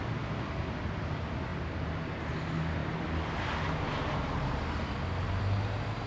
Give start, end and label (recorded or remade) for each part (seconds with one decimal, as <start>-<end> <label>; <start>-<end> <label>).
0.0-6.1 recorded